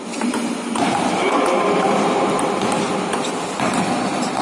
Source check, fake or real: real